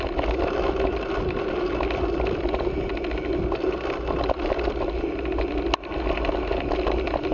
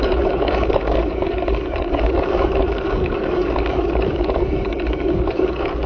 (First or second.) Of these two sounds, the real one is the first